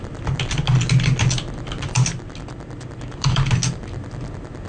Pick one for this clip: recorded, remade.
recorded